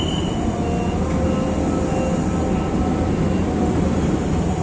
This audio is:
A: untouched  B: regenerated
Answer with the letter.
A